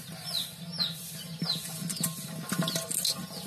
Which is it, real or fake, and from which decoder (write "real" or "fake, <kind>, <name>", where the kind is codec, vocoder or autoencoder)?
real